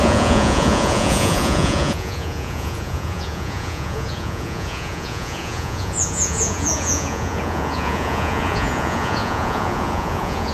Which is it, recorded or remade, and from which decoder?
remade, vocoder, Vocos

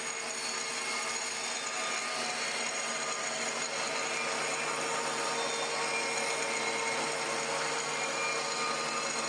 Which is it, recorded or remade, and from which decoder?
recorded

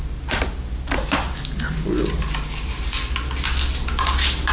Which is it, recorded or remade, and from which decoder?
recorded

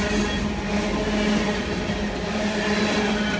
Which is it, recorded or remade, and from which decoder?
recorded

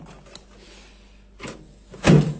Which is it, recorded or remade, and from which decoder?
recorded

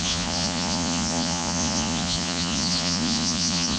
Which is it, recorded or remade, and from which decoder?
remade, vocoder, Vocos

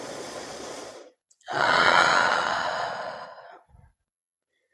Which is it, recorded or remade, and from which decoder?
remade, vocoder, Vocos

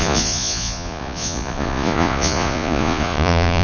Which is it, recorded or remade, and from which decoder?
remade, vocoder, Vocos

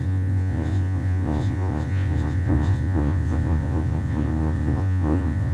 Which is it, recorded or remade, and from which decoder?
remade, vocoder, Vocos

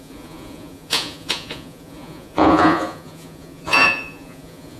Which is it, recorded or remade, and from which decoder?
remade, vocoder, Vocos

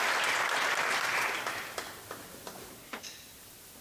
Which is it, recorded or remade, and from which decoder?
recorded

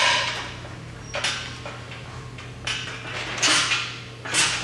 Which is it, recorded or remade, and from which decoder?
recorded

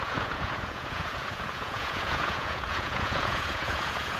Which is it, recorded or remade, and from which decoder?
remade, vocoder, Vocos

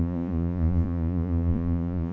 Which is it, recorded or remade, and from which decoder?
remade, vocoder, Vocos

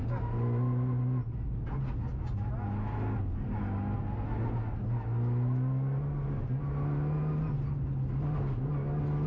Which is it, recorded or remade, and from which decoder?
recorded